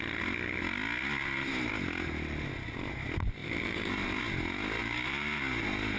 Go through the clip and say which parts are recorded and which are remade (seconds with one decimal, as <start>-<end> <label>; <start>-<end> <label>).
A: 0.0-1.2 recorded; 1.2-1.7 remade; 1.7-3.4 recorded; 3.4-4.2 remade; 4.2-4.8 recorded; 4.8-5.4 remade; 5.4-6.0 recorded